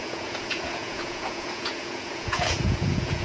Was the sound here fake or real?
fake